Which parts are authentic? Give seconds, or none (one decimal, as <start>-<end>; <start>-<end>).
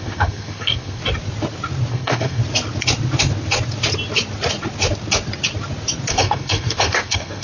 1.0-1.9; 2.4-6.1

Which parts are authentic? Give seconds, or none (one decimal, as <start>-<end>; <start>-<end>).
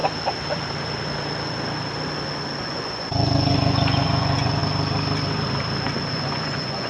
0.0-2.6; 4.6-6.1